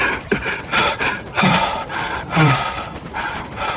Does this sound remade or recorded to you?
remade